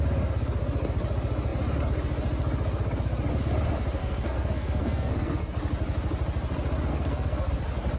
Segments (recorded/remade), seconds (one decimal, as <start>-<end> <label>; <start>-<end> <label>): 0.0-4.0 recorded; 4.0-5.5 remade; 5.5-6.9 recorded; 6.9-7.5 remade; 7.5-8.0 recorded